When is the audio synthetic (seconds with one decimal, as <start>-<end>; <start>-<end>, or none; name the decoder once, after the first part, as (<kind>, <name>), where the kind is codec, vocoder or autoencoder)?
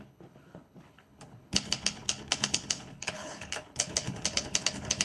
0.0-5.0 (codec, HILCodec)